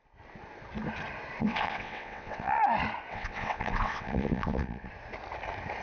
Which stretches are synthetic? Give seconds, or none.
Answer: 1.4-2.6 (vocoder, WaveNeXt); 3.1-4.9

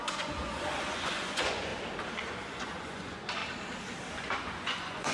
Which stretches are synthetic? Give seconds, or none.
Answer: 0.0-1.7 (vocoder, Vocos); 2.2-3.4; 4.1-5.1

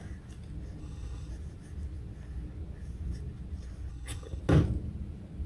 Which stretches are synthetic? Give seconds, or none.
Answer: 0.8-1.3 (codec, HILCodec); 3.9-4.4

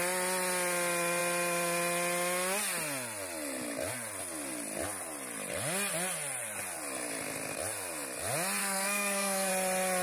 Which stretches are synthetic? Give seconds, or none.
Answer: 8.6-9.5 (codec, SNAC)

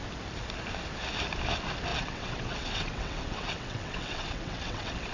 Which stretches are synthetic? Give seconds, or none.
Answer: 1.9-5.1 (vocoder, WaveNeXt)

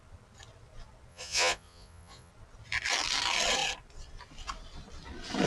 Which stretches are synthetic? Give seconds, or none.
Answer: 1.1-2.3 (vocoder, Vocos)